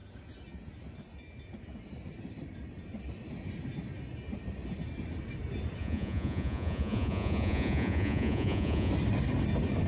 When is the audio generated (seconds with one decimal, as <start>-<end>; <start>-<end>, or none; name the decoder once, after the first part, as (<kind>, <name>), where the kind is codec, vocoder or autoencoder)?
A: 5.8-8.9 (vocoder, Vocos)